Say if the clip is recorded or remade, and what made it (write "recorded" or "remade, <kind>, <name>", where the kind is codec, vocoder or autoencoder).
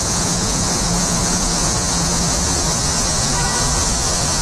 remade, vocoder, Vocos